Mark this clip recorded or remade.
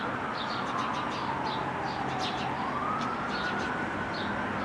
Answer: recorded